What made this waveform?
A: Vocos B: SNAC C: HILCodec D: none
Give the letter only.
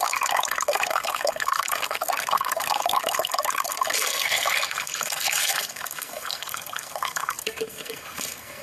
B